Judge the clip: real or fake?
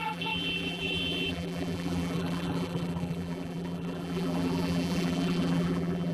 fake